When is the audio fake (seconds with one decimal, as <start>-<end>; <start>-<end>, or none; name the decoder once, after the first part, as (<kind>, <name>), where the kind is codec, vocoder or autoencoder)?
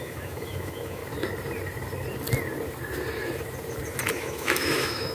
0.0-1.0 (autoencoder, DAC-VAE); 4.1-5.1